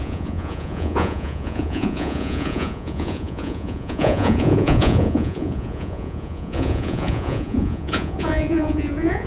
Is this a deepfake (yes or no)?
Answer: yes